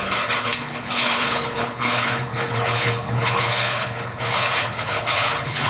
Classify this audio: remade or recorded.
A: remade